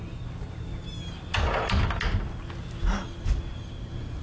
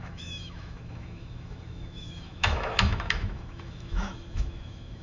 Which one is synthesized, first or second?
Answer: second